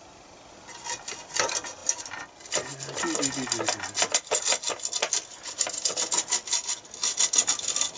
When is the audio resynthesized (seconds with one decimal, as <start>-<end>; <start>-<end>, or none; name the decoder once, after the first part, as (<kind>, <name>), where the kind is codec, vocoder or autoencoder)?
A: none